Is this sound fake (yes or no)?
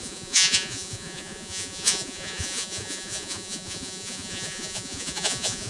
yes